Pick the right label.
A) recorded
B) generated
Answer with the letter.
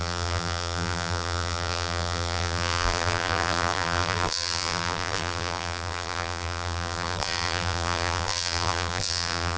B